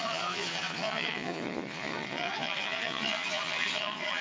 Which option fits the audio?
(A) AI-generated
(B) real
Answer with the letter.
A